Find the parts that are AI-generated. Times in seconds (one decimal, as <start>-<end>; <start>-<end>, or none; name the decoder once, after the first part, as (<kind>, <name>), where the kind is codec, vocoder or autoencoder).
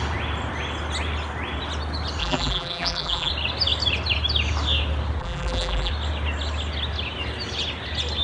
2.2-3.3 (vocoder, BigVGAN v2); 5.2-5.9